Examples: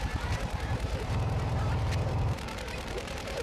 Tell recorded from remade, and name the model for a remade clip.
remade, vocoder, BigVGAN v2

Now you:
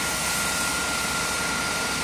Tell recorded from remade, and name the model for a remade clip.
remade, vocoder, BigVGAN v2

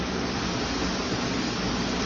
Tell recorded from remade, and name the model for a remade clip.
recorded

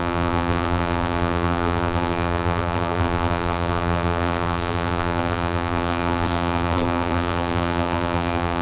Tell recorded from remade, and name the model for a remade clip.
remade, vocoder, BigVGAN v2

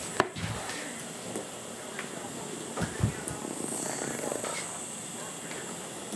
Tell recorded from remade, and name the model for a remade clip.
recorded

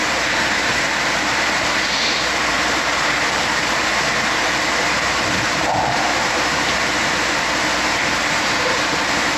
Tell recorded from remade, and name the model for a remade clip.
remade, vocoder, BigVGAN v2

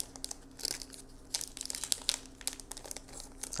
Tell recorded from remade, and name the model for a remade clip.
recorded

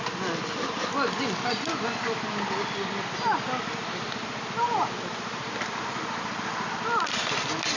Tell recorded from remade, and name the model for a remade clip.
recorded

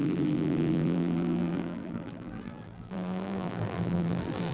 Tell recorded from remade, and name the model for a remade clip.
remade, vocoder, BigVGAN v2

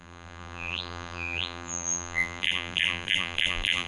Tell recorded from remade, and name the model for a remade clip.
remade, vocoder, BigVGAN v2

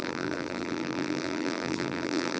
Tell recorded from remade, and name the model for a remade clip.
remade, vocoder, BigVGAN v2